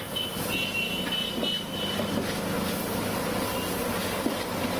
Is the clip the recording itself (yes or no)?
yes